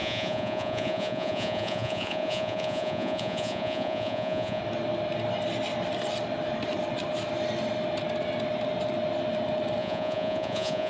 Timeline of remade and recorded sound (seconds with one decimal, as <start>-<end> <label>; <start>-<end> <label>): 0.0-4.6 remade; 4.6-9.8 recorded; 9.8-10.9 remade